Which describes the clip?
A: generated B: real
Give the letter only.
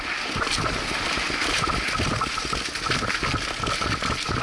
B